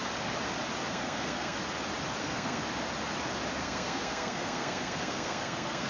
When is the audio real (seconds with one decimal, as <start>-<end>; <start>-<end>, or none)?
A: 0.0-0.9; 1.6-2.2; 2.6-3.6